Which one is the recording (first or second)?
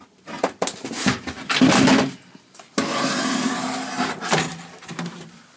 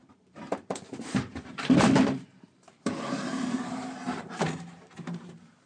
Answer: first